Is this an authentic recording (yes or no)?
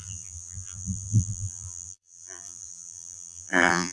no